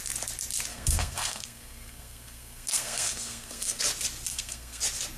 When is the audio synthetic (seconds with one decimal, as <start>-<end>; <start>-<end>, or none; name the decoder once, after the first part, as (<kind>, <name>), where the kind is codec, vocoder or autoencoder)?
0.7-3.8 (codec, SNAC); 4.3-4.8